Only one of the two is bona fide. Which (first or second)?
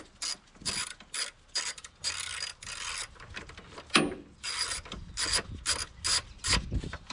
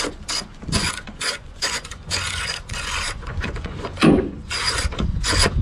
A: first